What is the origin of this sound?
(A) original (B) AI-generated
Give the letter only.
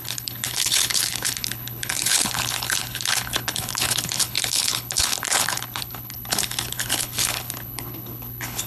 B